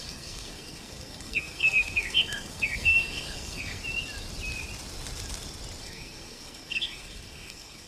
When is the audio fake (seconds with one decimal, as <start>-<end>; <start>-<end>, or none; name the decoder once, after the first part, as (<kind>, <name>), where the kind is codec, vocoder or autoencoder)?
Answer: 0.0-3.8 (codec, SNAC); 5.8-7.9